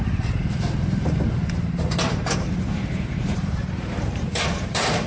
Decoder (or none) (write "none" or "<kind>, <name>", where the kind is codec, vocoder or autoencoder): vocoder, BigVGAN v2